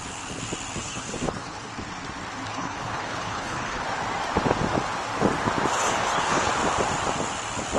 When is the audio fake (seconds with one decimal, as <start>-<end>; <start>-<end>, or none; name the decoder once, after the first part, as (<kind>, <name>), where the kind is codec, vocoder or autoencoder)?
0.8-1.7 (codec, HILCodec); 2.5-3.8; 5.7-6.5